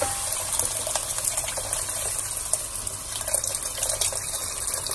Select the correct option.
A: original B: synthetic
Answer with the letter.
A